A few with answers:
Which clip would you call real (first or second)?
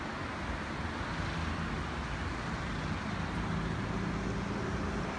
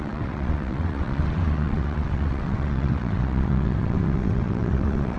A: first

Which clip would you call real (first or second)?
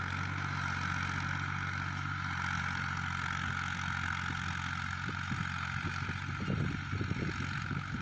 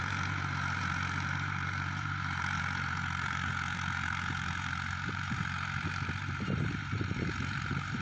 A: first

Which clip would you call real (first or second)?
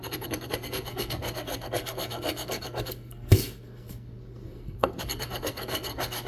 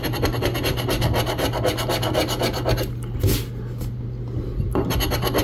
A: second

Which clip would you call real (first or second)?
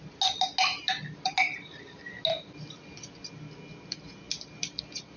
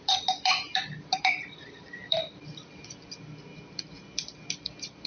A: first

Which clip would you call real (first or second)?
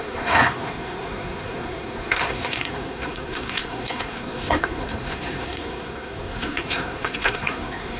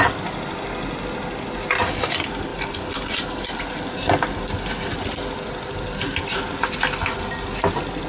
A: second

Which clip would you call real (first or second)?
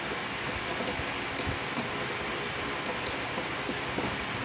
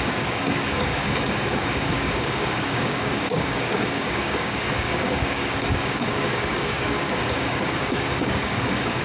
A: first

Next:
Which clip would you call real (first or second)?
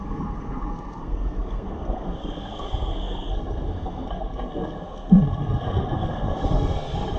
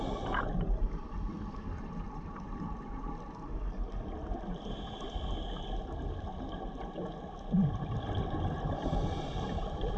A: second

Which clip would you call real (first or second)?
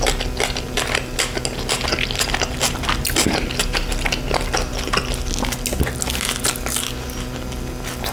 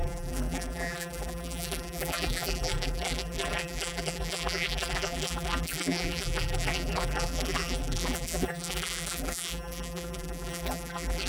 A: first